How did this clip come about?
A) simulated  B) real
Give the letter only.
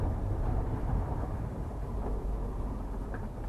A